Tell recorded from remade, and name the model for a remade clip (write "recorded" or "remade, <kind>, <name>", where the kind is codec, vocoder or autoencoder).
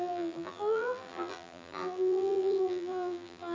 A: remade, vocoder, BigVGAN v2